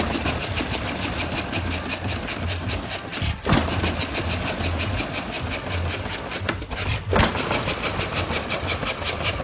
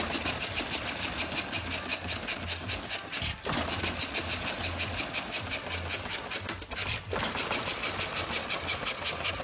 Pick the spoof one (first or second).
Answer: first